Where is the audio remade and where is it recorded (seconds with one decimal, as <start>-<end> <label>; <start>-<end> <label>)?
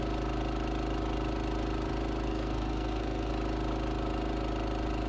0.0-2.3 recorded; 2.3-3.3 remade; 3.3-5.1 recorded